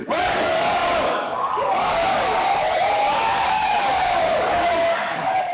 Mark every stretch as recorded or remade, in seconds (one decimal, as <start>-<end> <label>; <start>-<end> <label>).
0.0-5.5 remade